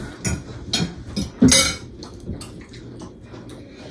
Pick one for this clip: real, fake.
real